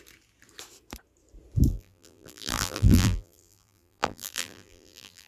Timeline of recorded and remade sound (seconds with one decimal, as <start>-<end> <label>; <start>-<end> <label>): 0.0-1.7 recorded; 1.7-5.3 remade